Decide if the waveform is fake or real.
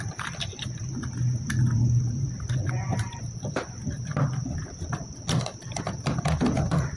real